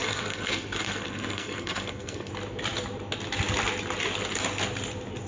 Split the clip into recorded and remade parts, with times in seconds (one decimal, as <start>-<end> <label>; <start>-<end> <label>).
0.0-2.3 remade; 2.3-5.3 recorded